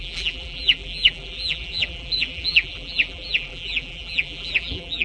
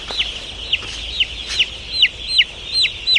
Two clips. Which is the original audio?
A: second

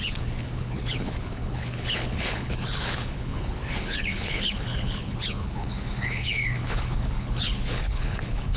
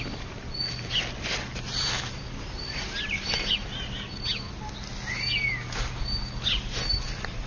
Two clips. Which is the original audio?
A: second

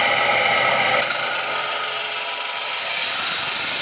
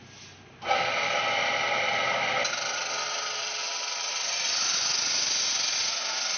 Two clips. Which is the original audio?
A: second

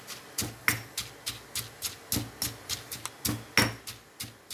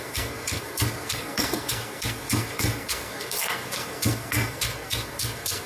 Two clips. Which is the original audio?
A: first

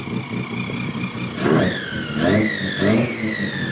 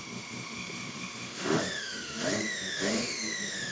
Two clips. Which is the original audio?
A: first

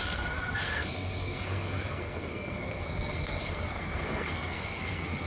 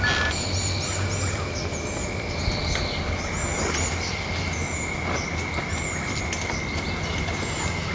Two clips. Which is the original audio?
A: second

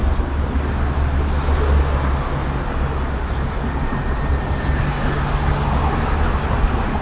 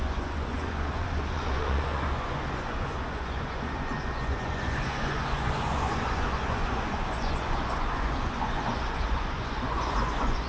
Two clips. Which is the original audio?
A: first